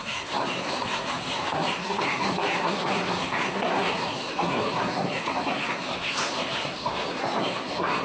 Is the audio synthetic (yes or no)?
yes